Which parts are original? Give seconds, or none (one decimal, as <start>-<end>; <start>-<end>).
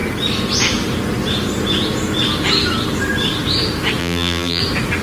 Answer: 0.0-4.0; 4.6-5.0